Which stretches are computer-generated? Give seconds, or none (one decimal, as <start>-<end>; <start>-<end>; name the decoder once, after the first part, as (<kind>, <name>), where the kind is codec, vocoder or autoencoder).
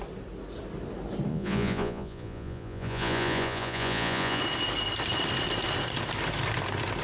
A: 1.3-4.4 (vocoder, Vocos)